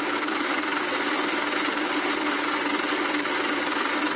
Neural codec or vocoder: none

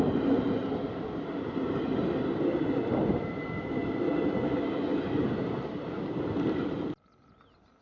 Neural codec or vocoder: none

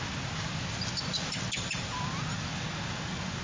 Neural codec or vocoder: none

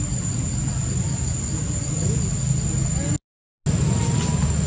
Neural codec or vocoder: none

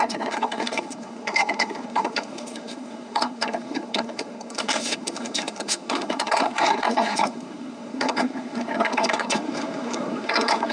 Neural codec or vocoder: codec, SNAC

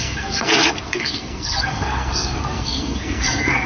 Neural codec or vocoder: codec, SNAC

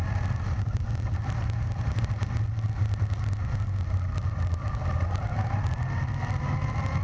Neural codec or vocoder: none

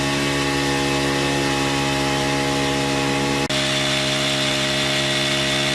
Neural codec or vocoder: none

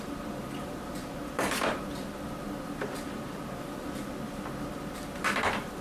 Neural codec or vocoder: none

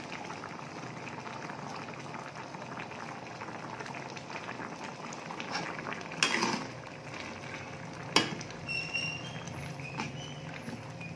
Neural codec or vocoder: none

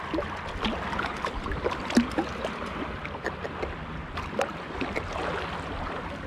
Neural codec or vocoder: none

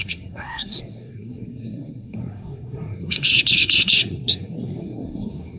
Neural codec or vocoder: codec, SNAC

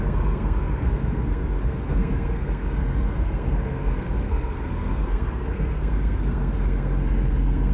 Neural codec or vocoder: codec, SNAC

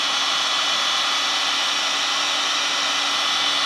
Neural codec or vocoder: none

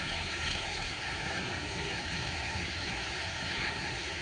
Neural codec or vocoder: codec, SNAC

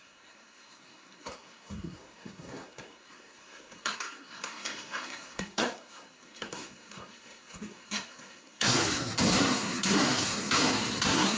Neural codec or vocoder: codec, SNAC